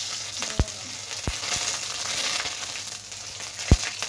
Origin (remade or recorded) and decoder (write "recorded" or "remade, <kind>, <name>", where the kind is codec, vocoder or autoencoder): recorded